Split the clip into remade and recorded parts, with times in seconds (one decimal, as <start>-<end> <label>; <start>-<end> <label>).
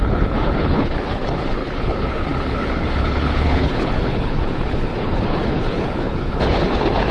0.0-7.1 remade